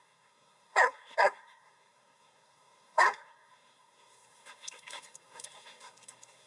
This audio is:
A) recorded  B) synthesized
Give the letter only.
B